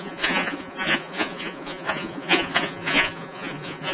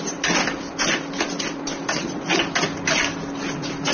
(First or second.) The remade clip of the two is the first